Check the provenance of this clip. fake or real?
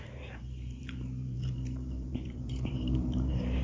fake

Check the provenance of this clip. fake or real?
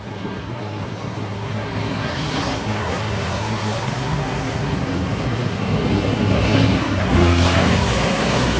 fake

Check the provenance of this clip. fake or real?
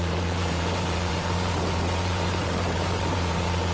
fake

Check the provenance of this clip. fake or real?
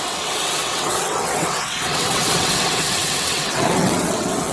fake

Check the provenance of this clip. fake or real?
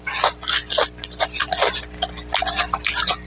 real